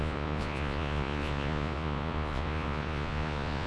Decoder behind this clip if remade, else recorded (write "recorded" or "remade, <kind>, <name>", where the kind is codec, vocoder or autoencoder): remade, vocoder, Vocos